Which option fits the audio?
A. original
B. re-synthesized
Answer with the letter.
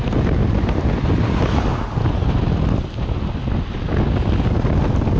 A